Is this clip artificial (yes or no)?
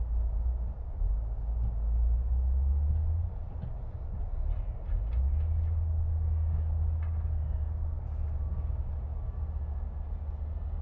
no